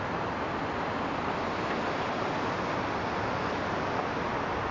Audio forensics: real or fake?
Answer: real